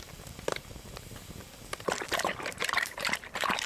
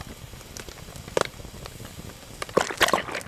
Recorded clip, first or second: second